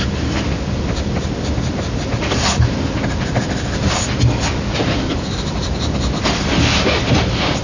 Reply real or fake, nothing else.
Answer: real